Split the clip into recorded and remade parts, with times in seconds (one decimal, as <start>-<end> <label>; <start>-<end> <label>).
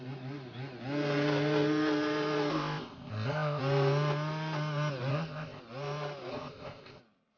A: 0.0-2.5 recorded; 2.5-3.6 remade; 3.6-5.1 recorded; 5.1-5.6 remade; 5.6-6.3 recorded; 6.3-7.0 remade; 7.0-7.4 recorded